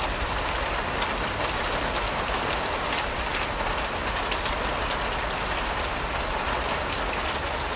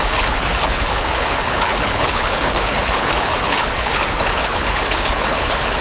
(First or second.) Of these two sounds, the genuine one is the first